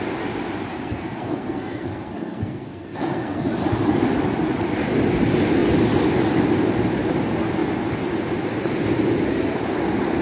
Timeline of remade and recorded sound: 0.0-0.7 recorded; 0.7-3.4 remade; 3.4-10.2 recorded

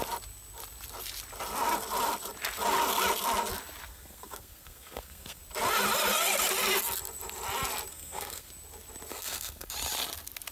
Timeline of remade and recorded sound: 0.0-3.9 recorded; 3.9-5.4 remade; 5.4-7.9 recorded; 7.9-8.5 remade; 8.5-9.1 recorded; 9.1-9.7 remade; 9.7-10.5 recorded

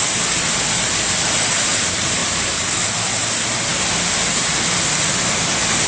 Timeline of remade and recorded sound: 0.0-5.9 recorded

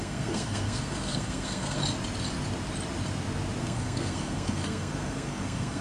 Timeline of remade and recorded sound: 0.0-1.8 remade; 1.8-3.6 recorded; 3.6-5.8 remade

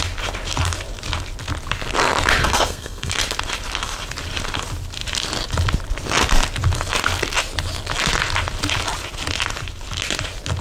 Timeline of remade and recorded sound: 0.0-2.4 recorded; 2.4-3.1 remade; 3.1-10.6 recorded

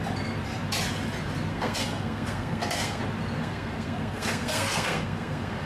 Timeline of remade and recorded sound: 0.0-1.5 recorded; 1.5-3.0 remade; 3.0-3.4 recorded; 3.4-5.7 remade